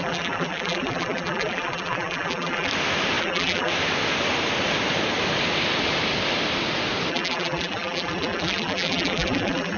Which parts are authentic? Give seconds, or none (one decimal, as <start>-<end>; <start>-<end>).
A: 2.7-3.2; 3.7-7.1